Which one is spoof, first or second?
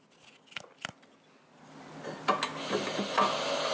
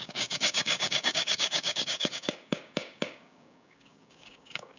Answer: second